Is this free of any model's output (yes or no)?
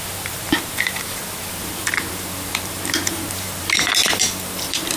no